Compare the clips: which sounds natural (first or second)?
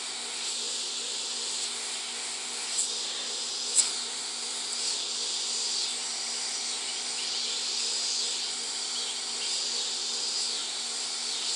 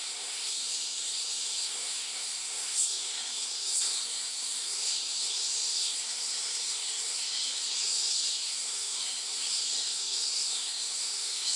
first